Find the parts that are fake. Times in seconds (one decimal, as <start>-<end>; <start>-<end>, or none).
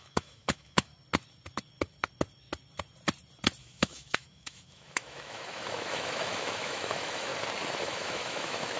0.0-0.9; 3.6-7.3; 7.8-8.8